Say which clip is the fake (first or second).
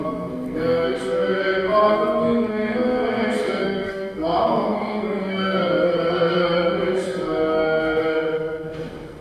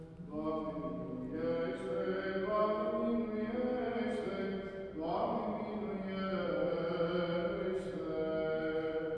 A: first